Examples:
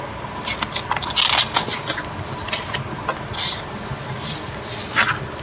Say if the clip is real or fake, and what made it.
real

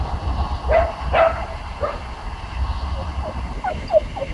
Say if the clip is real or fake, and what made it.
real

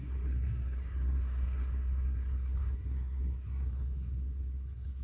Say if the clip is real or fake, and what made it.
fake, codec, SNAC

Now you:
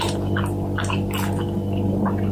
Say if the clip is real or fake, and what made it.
real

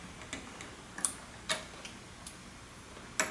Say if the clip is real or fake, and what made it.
real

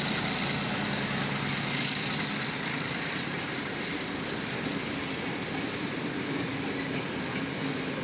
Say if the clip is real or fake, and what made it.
real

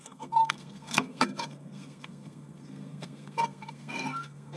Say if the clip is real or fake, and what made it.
fake, codec, SNAC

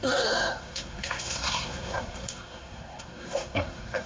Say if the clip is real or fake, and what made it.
fake, codec, SNAC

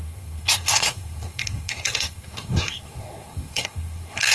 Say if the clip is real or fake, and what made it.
fake, codec, SNAC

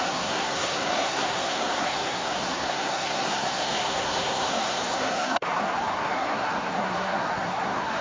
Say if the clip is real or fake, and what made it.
fake, codec, SNAC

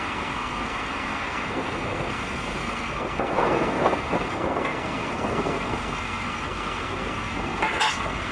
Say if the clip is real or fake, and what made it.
fake, codec, SNAC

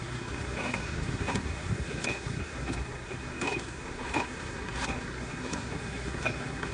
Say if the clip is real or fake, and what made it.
fake, codec, SNAC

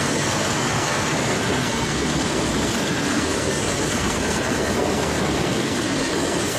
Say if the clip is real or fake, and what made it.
fake, codec, SNAC